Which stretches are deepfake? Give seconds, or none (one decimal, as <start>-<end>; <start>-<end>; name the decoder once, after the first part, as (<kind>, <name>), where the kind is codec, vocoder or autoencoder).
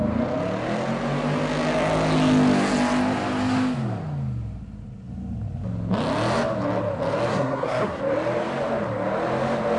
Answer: 7.3-8.0 (codec, SNAC)